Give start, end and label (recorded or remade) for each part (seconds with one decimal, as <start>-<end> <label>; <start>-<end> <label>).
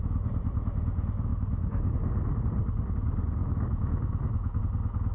0.0-3.4 recorded; 3.4-4.6 remade; 4.6-5.1 recorded